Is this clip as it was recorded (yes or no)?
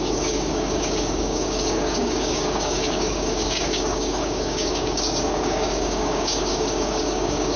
no